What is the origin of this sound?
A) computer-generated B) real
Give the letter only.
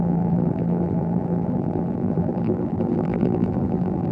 A